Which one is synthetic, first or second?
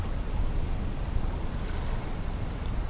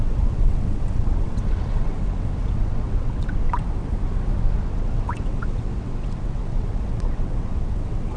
second